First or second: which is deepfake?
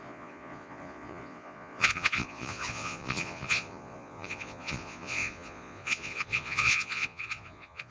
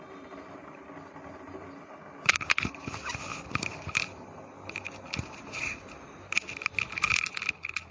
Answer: first